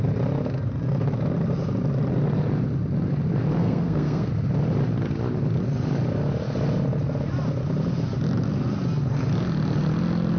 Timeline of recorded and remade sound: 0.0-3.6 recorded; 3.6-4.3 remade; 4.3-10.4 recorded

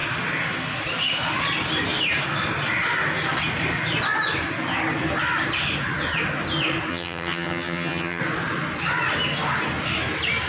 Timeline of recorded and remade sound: 0.0-6.9 recorded; 6.9-8.2 remade; 8.2-10.5 recorded

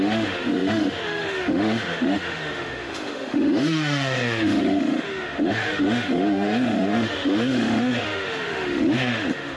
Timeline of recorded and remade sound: 0.0-9.6 remade

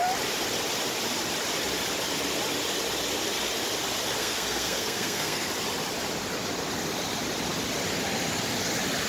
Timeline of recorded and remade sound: 0.0-4.2 recorded; 4.2-5.5 remade; 5.5-9.1 recorded

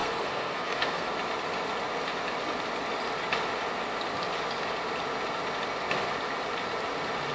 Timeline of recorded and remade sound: 0.0-1.1 remade; 1.1-7.3 recorded

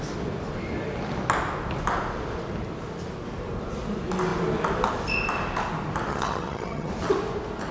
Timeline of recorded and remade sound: 0.0-6.1 recorded; 6.1-6.9 remade; 6.9-7.7 recorded

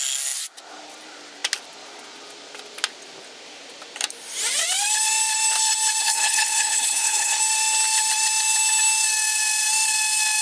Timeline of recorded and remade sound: 0.0-6.0 recorded; 6.0-7.4 remade; 7.4-10.4 recorded

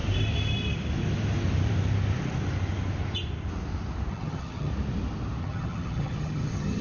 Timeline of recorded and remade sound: 0.0-4.1 recorded; 4.1-4.7 remade; 4.7-5.4 recorded; 5.4-6.8 remade